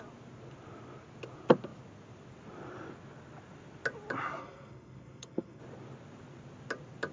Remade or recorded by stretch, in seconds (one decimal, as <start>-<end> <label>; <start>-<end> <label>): 0.0-4.4 recorded; 4.4-5.6 remade; 5.6-7.1 recorded